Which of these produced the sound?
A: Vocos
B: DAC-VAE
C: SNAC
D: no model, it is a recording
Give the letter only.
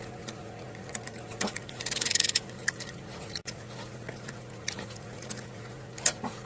A